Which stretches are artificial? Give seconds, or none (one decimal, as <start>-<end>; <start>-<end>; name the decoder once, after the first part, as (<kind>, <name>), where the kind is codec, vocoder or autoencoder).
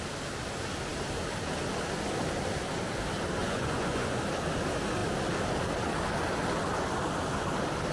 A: 3.4-4.2 (vocoder, Vocos)